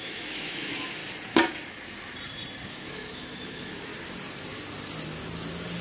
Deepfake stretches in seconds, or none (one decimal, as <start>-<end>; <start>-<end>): 0.0-1.0; 2.7-3.9